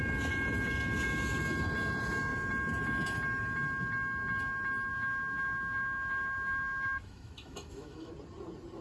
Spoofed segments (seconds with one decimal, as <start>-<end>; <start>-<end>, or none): 4.9-8.1